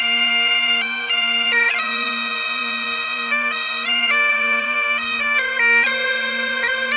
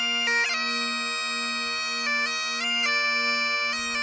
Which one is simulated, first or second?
first